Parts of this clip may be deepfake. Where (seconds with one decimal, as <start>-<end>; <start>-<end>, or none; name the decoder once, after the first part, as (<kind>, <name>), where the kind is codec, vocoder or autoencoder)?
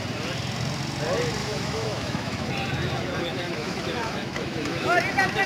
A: 1.4-2.5 (autoencoder, DAC-VAE); 3.3-5.0